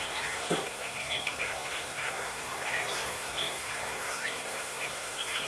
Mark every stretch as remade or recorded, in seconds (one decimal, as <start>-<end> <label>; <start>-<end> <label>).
0.0-5.5 remade